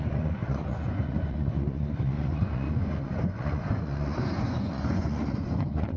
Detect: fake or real fake